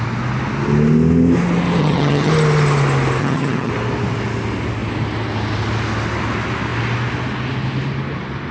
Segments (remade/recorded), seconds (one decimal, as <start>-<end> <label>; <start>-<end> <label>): 0.0-1.8 recorded; 1.8-2.3 remade; 2.3-3.2 recorded; 3.2-3.7 remade; 3.7-8.5 recorded